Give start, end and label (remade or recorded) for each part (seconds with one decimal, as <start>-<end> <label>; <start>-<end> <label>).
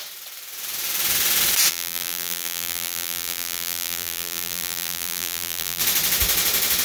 0.0-1.7 recorded; 1.7-5.8 remade; 5.8-6.8 recorded